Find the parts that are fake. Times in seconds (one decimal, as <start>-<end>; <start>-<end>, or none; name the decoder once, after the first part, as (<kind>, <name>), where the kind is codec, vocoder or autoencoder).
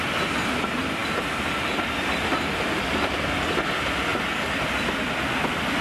none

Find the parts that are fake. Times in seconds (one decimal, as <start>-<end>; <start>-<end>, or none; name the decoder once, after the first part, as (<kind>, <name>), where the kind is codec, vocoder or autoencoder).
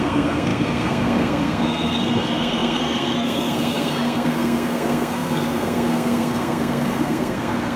0.0-7.8 (codec, SNAC)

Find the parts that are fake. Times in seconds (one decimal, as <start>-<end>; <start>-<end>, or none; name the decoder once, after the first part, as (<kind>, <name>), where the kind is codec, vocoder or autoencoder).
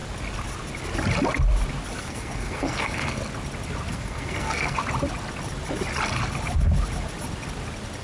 2.0-3.2 (codec, SNAC); 3.9-4.8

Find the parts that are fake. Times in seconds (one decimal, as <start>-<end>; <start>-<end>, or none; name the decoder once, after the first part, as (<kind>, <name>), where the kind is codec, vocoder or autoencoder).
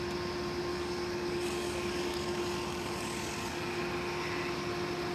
0.7-3.8 (codec, DAC)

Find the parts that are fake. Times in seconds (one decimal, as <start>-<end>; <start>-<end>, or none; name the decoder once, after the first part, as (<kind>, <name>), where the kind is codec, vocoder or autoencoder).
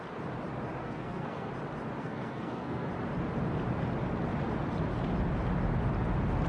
0.8-1.5 (codec, SNAC); 2.0-2.9